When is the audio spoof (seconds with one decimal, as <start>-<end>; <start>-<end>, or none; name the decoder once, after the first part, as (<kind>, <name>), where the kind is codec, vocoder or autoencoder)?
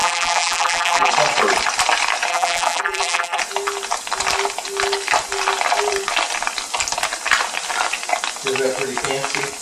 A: 0.0-1.1 (vocoder, BigVGAN v2); 2.3-3.4